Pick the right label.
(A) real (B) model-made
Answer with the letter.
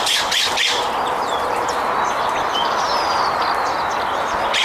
A